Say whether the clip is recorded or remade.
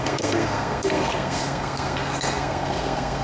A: remade